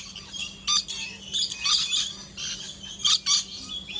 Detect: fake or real real